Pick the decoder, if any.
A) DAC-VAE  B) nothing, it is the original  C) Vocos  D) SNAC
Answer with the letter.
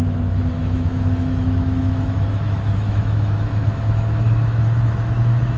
A